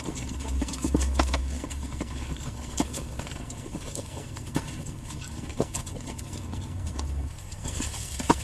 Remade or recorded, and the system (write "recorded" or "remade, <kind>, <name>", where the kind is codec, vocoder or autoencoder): remade, codec, SNAC